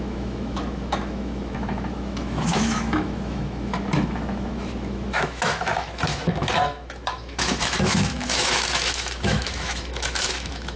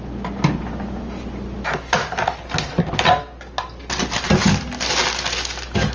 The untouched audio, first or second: second